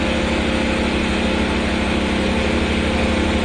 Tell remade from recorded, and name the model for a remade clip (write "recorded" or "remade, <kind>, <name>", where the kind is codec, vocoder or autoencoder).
recorded